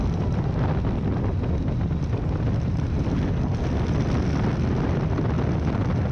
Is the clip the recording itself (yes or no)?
yes